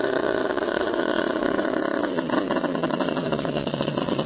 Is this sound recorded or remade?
remade